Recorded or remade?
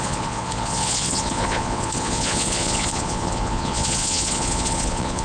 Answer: remade